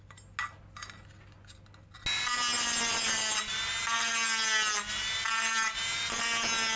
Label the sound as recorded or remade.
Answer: recorded